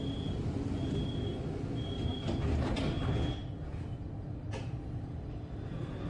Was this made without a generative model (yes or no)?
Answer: yes